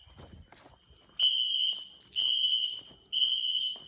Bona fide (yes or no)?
yes